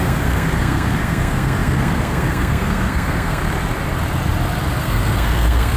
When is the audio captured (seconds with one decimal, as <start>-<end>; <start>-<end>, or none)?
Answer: 3.4-4.8